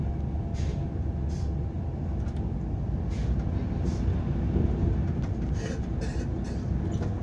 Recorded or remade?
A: recorded